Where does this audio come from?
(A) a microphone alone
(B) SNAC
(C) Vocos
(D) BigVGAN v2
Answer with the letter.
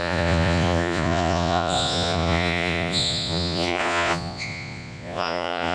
C